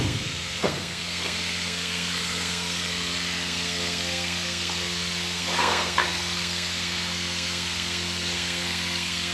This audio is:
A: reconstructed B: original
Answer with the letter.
A